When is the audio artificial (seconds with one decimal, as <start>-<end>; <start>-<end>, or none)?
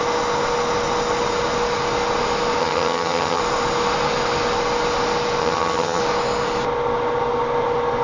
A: 2.6-3.4; 5.4-6.0